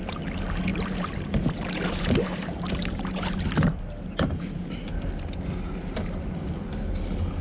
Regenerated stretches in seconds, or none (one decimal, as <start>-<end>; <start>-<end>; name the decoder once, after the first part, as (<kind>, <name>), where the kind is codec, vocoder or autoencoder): 0.7-5.1 (vocoder, BigVGAN v2)

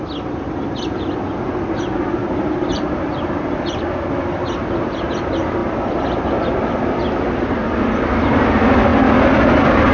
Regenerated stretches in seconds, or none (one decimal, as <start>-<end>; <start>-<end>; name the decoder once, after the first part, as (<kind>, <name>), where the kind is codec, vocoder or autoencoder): 2.2-3.9 (vocoder, BigVGAN v2)

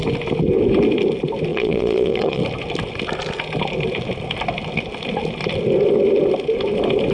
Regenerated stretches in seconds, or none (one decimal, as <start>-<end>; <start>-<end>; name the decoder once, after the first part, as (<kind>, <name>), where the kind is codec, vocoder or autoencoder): 1.5-2.4 (vocoder, Vocos)

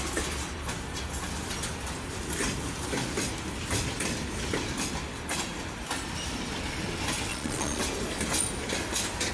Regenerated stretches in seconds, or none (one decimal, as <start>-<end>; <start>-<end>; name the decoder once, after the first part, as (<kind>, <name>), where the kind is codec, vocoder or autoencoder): 7.3-7.8 (vocoder, Vocos)

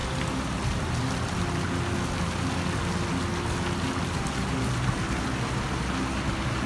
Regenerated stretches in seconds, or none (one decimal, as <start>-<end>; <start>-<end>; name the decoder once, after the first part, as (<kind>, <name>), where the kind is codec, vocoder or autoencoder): none

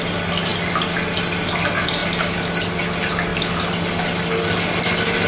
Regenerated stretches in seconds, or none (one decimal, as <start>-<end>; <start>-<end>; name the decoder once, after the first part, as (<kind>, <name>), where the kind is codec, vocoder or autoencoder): none

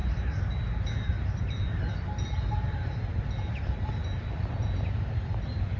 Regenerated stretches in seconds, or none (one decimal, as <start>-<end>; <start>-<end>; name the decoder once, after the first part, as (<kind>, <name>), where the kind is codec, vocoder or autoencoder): none

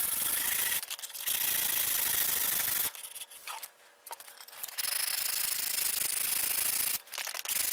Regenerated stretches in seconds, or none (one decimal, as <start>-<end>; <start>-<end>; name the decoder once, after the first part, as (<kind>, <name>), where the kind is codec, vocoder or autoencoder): 0.0-0.7 (vocoder, BigVGAN v2); 3.4-4.5; 5.1-6.3